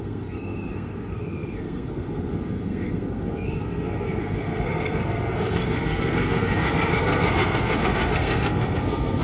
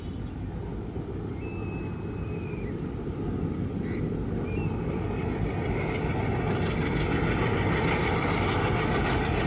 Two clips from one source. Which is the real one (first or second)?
second